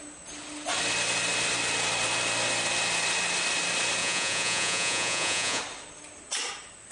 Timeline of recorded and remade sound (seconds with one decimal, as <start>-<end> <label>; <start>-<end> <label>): 0.0-4.0 recorded; 4.0-5.6 remade; 5.6-6.9 recorded